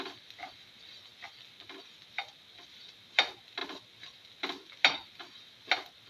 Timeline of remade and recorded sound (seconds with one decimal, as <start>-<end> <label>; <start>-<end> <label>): 0.0-6.1 recorded